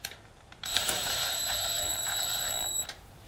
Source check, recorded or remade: remade